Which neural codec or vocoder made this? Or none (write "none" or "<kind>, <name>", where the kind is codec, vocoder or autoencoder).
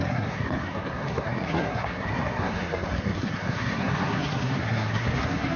codec, SNAC